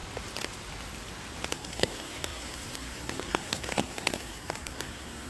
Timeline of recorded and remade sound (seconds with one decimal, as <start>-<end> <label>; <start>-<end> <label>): 0.0-1.5 recorded; 1.5-5.3 remade